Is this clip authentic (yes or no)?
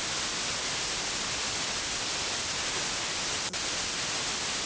yes